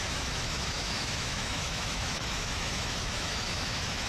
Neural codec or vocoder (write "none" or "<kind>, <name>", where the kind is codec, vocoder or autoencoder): autoencoder, DAC-VAE